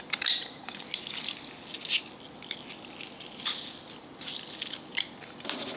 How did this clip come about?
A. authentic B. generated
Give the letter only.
A